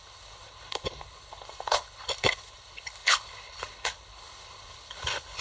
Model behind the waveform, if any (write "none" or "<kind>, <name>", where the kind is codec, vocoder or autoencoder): codec, HILCodec